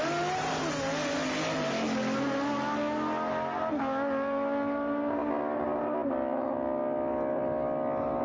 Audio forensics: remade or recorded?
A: recorded